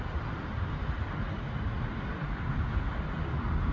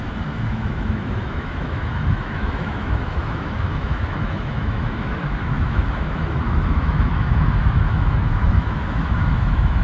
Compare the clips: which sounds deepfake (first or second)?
second